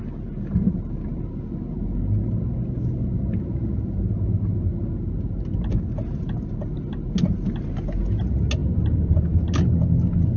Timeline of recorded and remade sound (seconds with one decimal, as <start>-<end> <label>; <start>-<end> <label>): 0.0-10.4 recorded